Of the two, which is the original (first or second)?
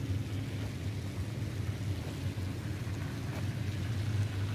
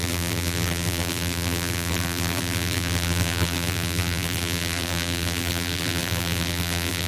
first